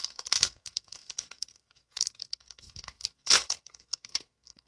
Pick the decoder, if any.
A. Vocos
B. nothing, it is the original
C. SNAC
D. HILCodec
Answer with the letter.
C